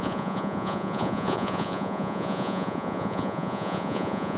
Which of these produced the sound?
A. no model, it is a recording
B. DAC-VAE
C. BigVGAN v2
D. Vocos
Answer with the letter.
D